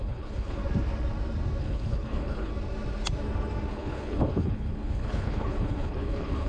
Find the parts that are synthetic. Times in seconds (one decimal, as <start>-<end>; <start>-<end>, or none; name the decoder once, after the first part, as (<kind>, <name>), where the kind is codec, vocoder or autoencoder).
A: 0.0-0.6 (codec, HILCodec); 1.6-2.5; 3.7-6.5